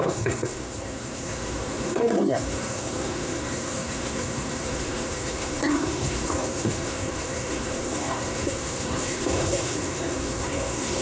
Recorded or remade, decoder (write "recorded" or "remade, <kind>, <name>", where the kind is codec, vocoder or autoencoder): remade, codec, SNAC